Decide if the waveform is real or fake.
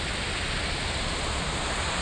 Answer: fake